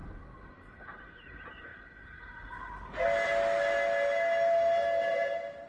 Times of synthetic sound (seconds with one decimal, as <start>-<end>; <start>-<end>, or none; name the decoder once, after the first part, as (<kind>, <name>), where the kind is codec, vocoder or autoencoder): 0.8-1.7 (vocoder, BigVGAN v2); 5.1-5.7